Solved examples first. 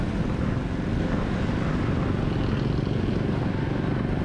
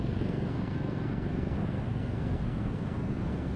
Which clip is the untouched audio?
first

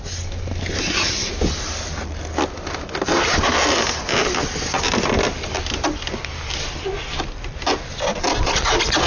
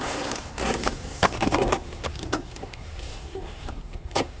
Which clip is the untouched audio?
first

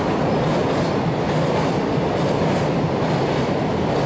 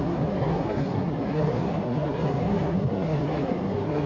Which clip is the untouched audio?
first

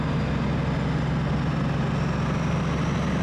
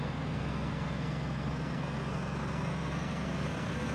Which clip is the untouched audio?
first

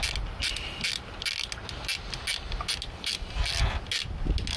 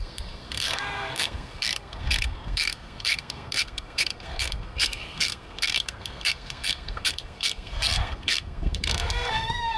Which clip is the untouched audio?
first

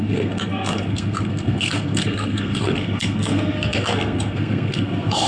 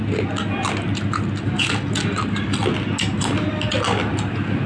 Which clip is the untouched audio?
second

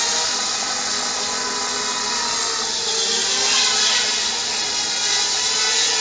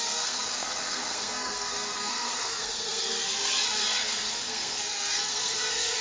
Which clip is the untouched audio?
first